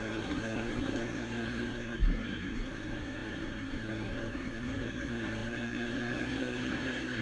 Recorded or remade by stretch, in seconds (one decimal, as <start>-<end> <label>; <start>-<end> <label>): 0.0-7.2 remade